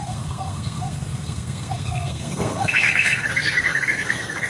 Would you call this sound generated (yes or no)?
yes